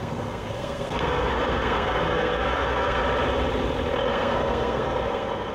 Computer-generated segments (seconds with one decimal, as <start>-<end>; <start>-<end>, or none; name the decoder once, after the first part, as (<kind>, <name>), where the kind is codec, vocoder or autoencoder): 0.0-3.0 (codec, SNAC); 4.1-5.5